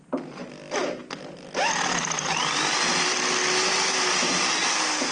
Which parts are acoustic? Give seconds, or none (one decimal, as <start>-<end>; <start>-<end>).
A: 0.0-5.1